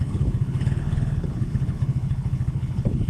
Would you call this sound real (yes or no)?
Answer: no